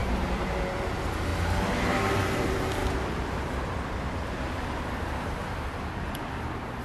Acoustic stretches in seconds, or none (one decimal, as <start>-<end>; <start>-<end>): 1.3-1.9; 2.8-4.8